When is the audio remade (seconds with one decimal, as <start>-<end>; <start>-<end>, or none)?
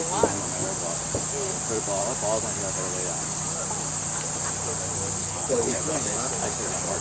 5.2-6.1